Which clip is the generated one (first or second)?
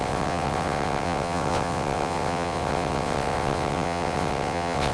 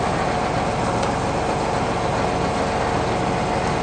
first